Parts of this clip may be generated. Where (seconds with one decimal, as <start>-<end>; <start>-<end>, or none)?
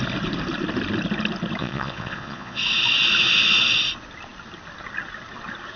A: 1.6-2.6